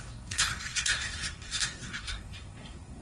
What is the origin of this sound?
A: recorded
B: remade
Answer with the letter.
B